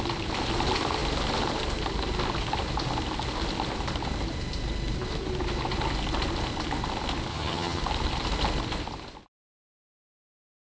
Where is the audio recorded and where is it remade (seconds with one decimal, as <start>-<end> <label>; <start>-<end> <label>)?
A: 0.0-7.3 recorded; 7.3-7.8 remade; 7.8-10.7 recorded